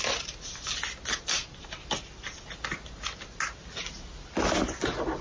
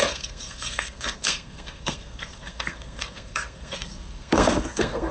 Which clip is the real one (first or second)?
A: first